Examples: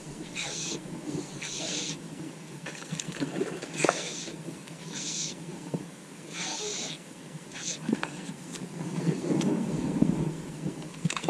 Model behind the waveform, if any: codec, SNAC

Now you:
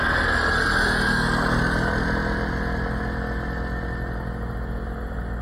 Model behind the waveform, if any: none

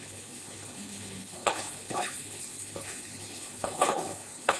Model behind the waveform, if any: codec, HILCodec